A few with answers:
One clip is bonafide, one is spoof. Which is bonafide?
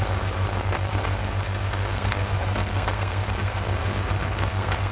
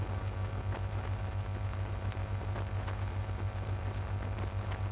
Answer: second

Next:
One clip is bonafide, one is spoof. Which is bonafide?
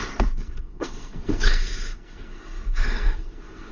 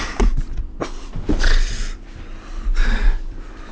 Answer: second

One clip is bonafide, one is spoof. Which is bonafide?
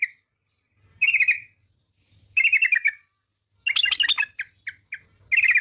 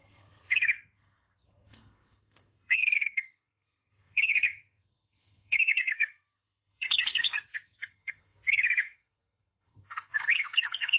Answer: first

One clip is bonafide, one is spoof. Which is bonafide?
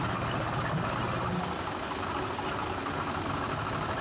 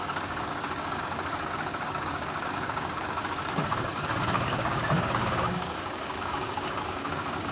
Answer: first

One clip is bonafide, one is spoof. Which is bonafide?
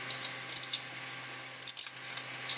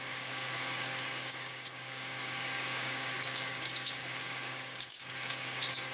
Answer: first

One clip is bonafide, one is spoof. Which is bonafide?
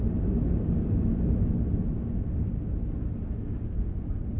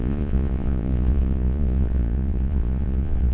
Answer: first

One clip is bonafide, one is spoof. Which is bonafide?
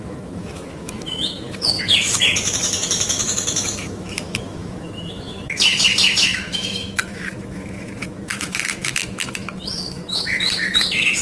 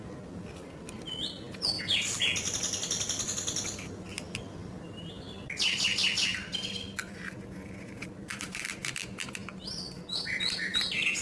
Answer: second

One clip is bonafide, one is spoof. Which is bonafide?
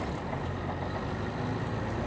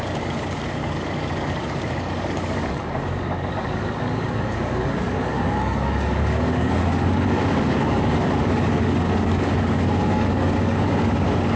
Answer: first